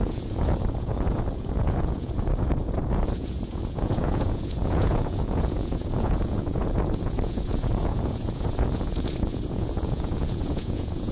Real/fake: fake